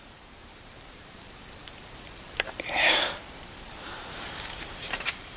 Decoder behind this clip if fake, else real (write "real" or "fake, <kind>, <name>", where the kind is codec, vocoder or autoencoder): fake, vocoder, BigVGAN v2